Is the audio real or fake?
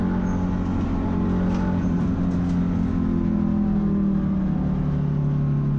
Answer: real